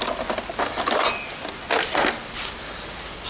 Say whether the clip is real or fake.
real